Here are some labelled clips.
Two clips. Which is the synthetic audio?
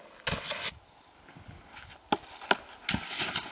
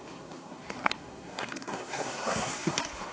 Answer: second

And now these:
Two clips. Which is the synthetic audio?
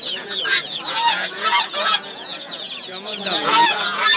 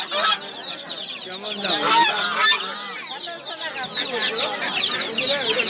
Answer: first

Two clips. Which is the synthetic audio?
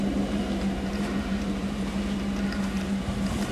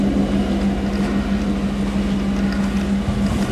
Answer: first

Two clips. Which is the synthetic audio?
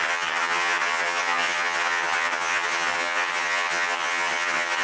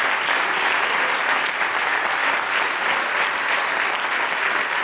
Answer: first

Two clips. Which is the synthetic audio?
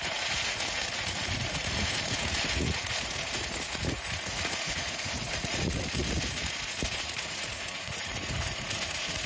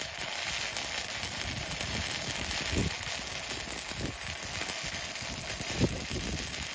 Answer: first